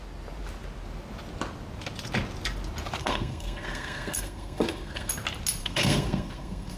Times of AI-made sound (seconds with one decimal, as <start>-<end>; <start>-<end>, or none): 3.0-5.1; 5.6-6.8